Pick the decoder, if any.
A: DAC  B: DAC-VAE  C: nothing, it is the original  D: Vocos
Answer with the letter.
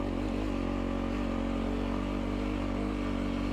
C